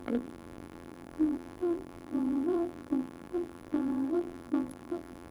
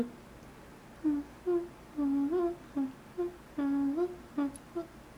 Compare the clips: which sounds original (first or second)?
second